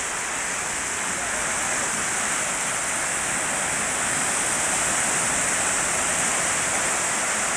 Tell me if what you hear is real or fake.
real